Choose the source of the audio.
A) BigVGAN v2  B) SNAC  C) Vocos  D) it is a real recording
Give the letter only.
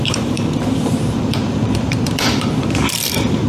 A